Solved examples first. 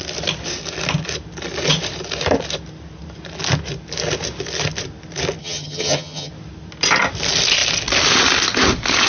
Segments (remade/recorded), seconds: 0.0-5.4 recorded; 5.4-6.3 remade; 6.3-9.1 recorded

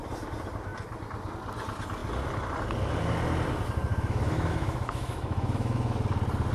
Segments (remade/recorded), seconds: 0.0-3.9 recorded; 3.9-6.0 remade; 6.0-6.5 recorded

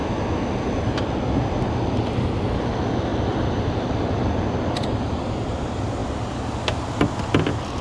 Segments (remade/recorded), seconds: 0.0-3.1 recorded; 3.1-5.2 remade; 5.2-7.8 recorded

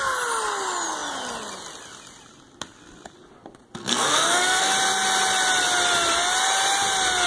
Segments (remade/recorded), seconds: 0.0-3.8 recorded; 3.8-4.7 remade; 4.7-7.3 recorded

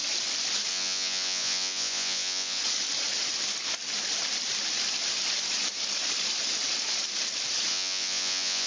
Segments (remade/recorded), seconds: 0.0-0.7 recorded; 0.7-2.6 remade; 2.6-7.7 recorded; 7.7-8.7 remade

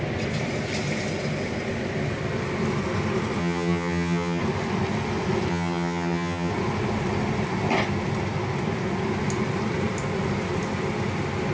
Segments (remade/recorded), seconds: 0.0-3.4 recorded; 3.4-4.4 remade; 4.4-5.5 recorded; 5.5-6.5 remade; 6.5-11.5 recorded

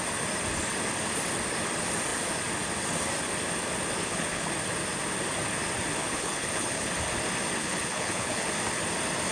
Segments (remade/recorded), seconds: 0.0-4.0 recorded; 4.0-4.5 remade; 4.5-6.0 recorded; 6.0-6.9 remade; 6.9-7.6 recorded; 7.6-8.5 remade; 8.5-9.3 recorded

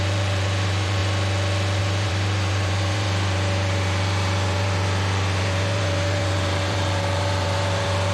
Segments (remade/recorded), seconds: 0.0-1.0 remade; 1.0-1.8 recorded; 1.8-8.1 remade